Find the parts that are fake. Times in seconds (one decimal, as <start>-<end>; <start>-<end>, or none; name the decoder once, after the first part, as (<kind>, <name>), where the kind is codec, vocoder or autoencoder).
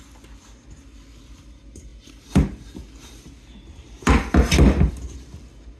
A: none